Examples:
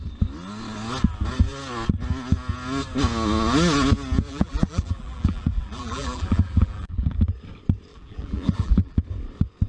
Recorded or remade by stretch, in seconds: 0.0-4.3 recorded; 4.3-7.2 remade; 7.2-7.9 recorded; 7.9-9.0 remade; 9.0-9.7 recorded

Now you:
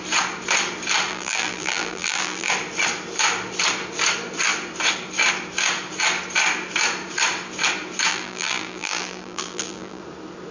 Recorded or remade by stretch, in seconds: 0.0-1.1 recorded; 1.1-2.5 remade; 2.5-8.1 recorded; 8.1-10.0 remade; 10.0-10.5 recorded

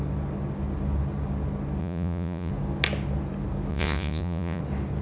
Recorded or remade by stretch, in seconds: 0.0-1.8 recorded; 1.8-2.5 remade; 2.5-3.7 recorded; 3.7-4.6 remade; 4.6-5.0 recorded

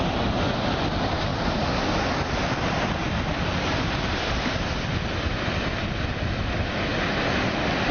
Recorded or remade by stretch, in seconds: 0.0-7.9 recorded

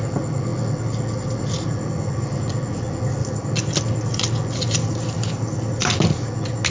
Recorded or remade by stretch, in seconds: 0.0-6.7 recorded

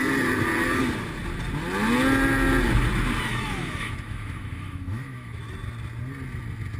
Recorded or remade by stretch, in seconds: 0.0-3.3 recorded; 3.3-5.4 remade; 5.4-6.8 recorded

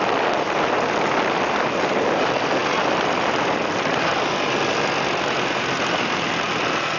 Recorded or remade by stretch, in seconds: 0.0-7.0 recorded